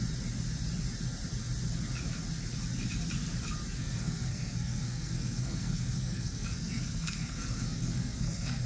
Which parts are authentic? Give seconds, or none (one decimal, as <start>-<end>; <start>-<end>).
0.0-3.8